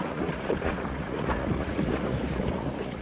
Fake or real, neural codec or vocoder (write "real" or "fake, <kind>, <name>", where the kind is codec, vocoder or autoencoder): fake, vocoder, Vocos